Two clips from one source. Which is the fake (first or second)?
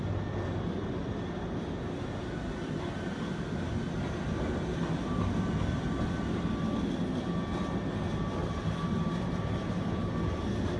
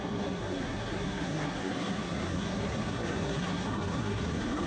second